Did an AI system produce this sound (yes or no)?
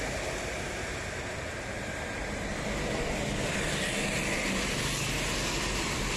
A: no